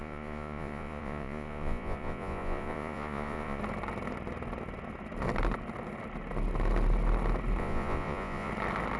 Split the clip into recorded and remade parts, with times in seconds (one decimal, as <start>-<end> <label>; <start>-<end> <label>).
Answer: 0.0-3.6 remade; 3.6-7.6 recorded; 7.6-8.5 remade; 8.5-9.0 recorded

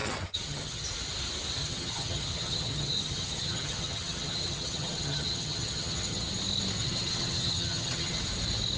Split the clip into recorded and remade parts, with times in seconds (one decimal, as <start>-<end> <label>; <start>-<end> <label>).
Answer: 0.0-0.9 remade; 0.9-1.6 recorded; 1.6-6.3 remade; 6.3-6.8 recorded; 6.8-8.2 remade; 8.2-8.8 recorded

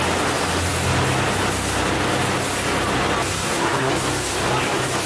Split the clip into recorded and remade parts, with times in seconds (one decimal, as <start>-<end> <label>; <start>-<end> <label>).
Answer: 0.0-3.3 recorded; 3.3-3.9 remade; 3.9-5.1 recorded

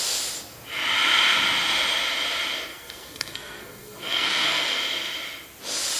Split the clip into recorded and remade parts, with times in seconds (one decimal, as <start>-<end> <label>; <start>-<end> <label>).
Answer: 0.0-2.7 recorded; 2.7-4.8 remade; 4.8-6.0 recorded

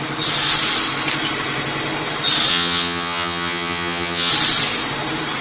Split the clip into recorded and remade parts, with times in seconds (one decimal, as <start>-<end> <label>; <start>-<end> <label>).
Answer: 0.0-2.5 recorded; 2.5-4.3 remade; 4.3-5.4 recorded

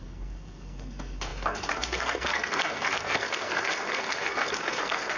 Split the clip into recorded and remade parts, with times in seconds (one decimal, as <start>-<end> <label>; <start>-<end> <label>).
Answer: 0.0-5.2 remade